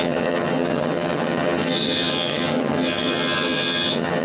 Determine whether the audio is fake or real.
fake